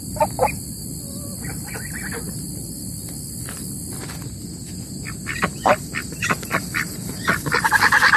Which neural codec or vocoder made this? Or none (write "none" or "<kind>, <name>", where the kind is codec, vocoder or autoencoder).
none